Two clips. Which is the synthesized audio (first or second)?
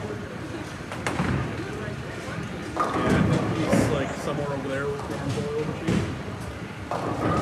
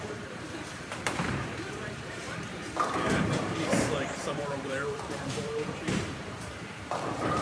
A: second